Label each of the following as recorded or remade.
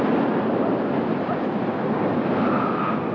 recorded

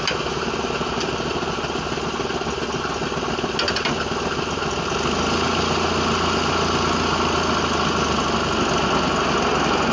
recorded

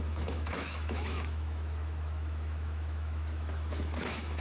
remade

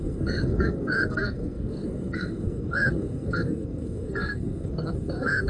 remade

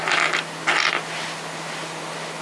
recorded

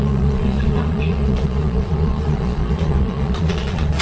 remade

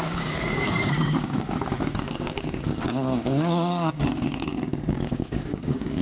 remade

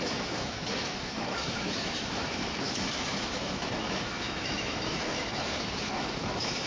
remade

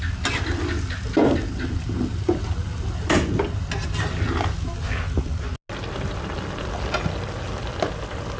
recorded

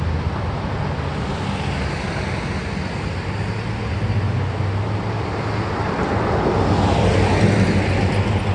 recorded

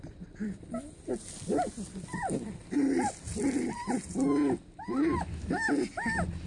recorded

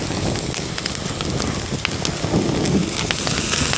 recorded